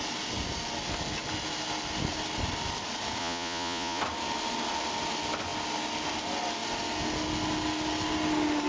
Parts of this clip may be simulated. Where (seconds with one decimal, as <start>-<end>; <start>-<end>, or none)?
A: 3.2-4.0